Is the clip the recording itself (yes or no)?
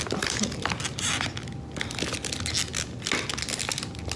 yes